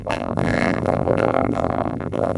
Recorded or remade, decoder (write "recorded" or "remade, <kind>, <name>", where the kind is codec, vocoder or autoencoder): remade, vocoder, BigVGAN v2